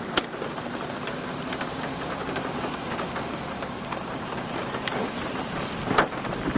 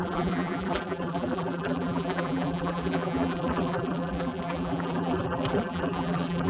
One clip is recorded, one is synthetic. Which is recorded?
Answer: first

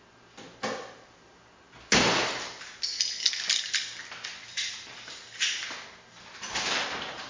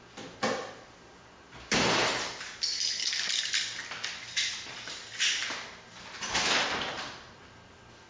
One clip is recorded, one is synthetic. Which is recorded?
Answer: first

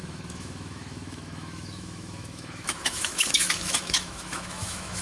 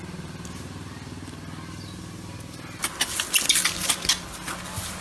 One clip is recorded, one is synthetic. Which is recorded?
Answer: second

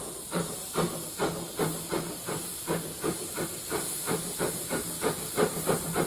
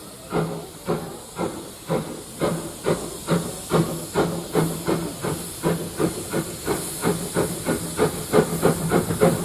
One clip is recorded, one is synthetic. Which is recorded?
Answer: second